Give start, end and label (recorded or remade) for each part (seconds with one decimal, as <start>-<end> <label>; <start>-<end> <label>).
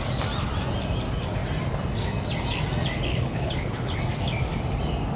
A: 0.0-3.1 recorded; 3.1-4.0 remade; 4.0-5.2 recorded